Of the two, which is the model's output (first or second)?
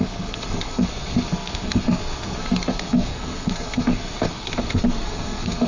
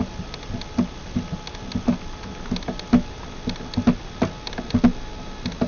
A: first